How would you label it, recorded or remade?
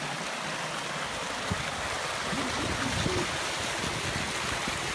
recorded